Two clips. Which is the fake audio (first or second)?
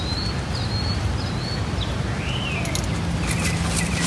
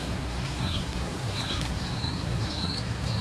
second